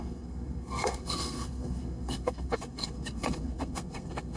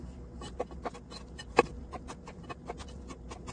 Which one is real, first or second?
second